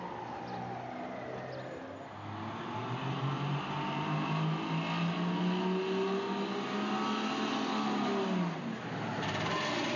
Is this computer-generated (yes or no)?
no